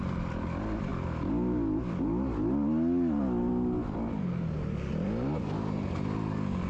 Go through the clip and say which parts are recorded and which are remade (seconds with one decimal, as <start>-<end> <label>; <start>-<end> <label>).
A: 0.0-6.7 recorded

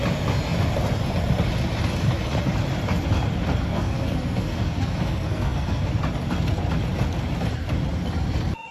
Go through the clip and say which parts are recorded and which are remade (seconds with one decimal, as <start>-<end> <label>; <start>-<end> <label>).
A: 0.0-3.7 recorded; 3.7-5.9 remade; 5.9-8.7 recorded

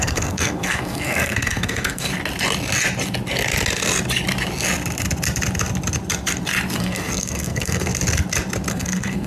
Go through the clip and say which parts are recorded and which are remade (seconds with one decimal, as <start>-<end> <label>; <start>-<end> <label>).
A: 0.0-2.1 remade; 2.1-6.8 recorded; 6.8-7.9 remade; 7.9-8.7 recorded; 8.7-9.3 remade

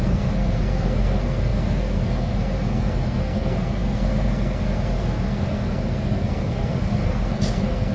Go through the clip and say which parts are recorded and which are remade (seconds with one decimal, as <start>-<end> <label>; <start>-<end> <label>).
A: 0.0-7.9 remade

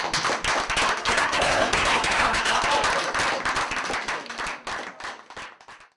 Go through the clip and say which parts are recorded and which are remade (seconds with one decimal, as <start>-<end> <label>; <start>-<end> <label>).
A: 0.0-1.0 recorded; 1.0-2.6 remade; 2.6-6.0 recorded

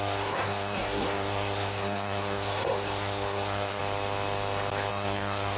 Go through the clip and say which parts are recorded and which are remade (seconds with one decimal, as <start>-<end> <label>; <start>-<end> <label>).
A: 0.0-3.8 remade; 3.8-4.9 recorded; 4.9-5.6 remade

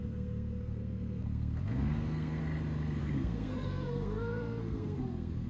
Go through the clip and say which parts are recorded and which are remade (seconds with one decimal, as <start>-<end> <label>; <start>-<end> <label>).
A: 0.0-2.4 remade; 2.4-3.0 recorded; 3.0-5.5 remade